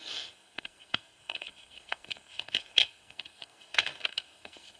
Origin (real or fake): fake